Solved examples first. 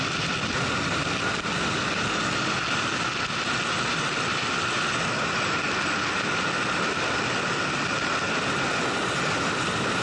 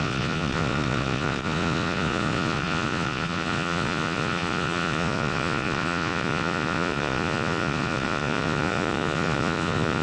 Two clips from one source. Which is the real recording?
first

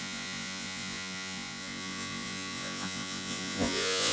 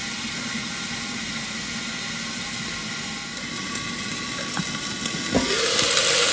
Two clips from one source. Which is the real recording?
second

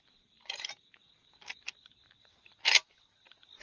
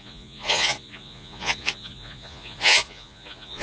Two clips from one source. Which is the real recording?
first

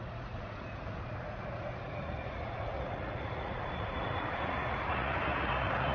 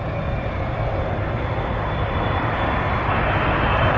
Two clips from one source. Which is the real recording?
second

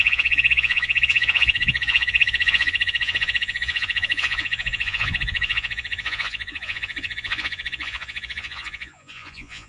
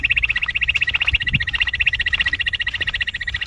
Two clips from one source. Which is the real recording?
second